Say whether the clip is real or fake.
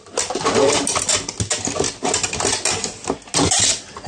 real